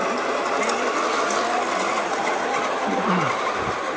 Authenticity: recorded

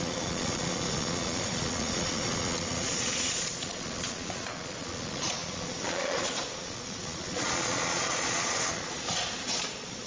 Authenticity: remade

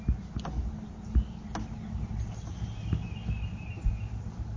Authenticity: recorded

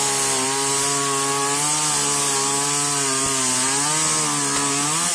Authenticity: recorded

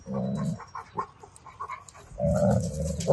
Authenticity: recorded